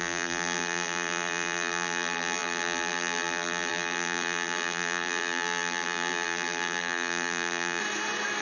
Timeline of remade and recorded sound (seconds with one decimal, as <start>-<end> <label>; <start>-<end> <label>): 0.0-7.8 remade; 7.8-8.4 recorded

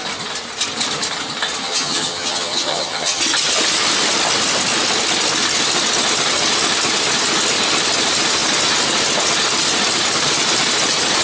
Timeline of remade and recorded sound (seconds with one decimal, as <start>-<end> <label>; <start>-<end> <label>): 0.0-1.6 recorded; 1.6-3.2 remade; 3.2-11.2 recorded

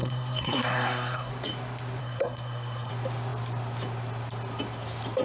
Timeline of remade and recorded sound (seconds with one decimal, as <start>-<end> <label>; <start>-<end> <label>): 0.0-1.3 remade; 1.3-2.0 recorded; 2.0-2.9 remade; 2.9-5.2 recorded

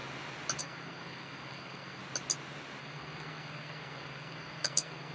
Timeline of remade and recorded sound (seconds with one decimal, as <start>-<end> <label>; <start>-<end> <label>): 0.0-0.6 recorded; 0.6-2.0 remade; 2.0-2.8 recorded; 2.8-5.1 remade

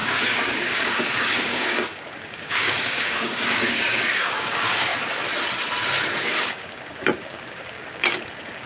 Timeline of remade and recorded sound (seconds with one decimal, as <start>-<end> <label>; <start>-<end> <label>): 0.0-4.9 remade; 4.9-6.2 recorded; 6.2-8.7 remade

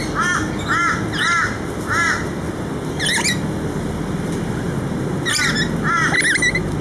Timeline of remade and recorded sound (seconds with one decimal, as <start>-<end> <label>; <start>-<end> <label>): 0.0-6.8 recorded